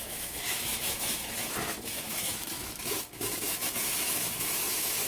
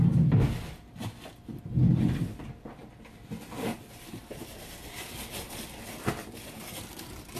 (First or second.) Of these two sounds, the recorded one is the second